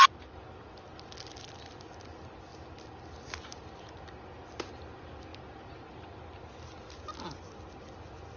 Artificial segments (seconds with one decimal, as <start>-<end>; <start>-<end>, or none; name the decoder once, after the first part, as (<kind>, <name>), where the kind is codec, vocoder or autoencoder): none